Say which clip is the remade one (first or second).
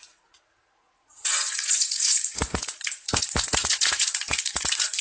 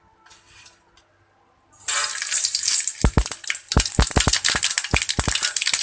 first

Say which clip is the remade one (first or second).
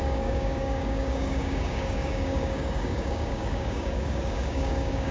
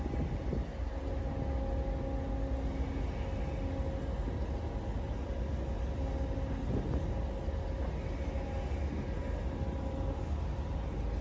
first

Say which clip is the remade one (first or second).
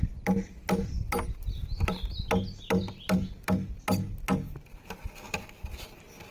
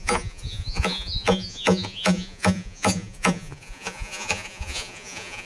second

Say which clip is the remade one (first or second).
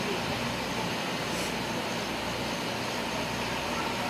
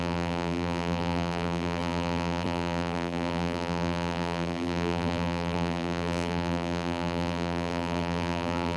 second